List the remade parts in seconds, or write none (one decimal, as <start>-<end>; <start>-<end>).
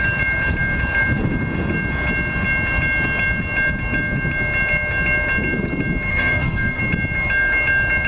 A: 6.1-6.8